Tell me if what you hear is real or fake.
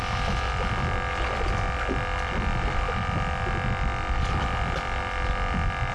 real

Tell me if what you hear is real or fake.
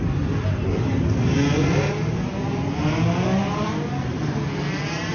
real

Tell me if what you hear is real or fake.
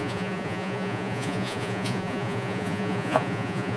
fake